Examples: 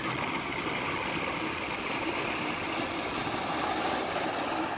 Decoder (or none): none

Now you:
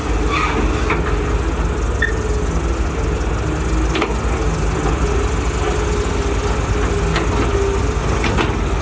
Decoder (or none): none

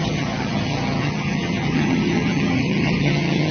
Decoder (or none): vocoder, HiFi-GAN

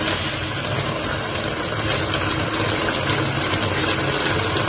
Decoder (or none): none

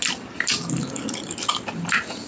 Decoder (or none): none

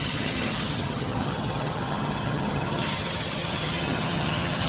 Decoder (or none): vocoder, HiFi-GAN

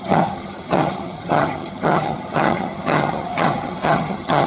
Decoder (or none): vocoder, HiFi-GAN